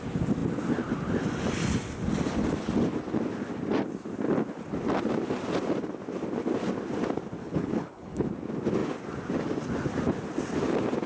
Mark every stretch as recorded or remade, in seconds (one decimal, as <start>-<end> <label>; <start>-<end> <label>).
0.0-7.4 recorded; 7.4-8.3 remade; 8.3-11.1 recorded